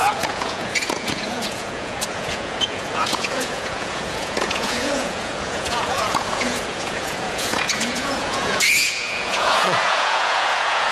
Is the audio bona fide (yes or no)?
no